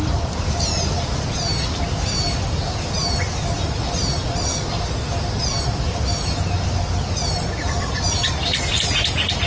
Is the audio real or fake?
real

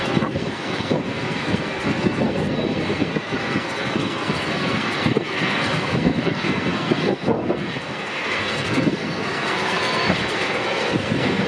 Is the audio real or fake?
fake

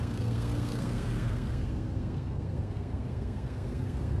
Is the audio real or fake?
fake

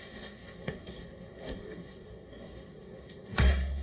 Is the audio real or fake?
fake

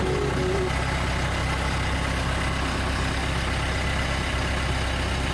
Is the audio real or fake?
real